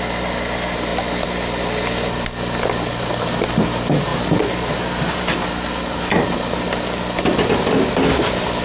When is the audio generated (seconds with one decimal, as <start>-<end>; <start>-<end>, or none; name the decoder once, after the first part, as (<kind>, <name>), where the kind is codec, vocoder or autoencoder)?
none